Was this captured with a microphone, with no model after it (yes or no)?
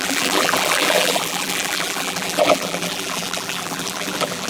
no